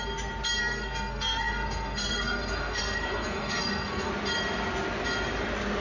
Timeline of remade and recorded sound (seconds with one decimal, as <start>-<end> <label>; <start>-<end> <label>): 0.0-0.6 recorded; 0.6-4.1 remade; 4.1-5.8 recorded